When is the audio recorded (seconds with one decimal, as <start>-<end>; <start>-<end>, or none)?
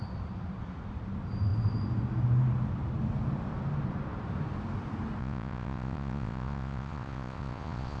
0.0-5.2